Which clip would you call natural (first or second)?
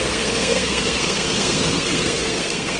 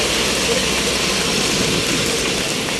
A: second